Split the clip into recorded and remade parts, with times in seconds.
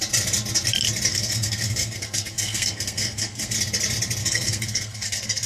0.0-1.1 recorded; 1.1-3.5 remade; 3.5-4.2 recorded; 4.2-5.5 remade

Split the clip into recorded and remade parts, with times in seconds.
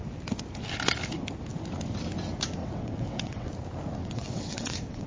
0.0-2.6 recorded; 2.6-3.5 remade; 3.5-4.0 recorded; 4.0-5.1 remade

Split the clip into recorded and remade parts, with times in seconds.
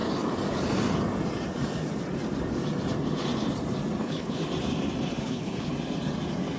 0.0-4.0 recorded; 4.0-4.4 remade; 4.4-5.2 recorded; 5.2-5.7 remade; 5.7-6.6 recorded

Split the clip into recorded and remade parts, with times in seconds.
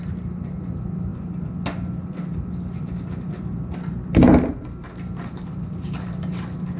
0.0-6.8 recorded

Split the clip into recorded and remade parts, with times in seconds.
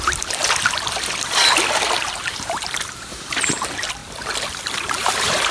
0.0-0.4 remade; 0.4-2.1 recorded; 2.1-4.0 remade; 4.0-4.8 recorded; 4.8-5.5 remade